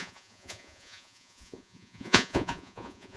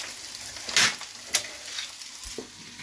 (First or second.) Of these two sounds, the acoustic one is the second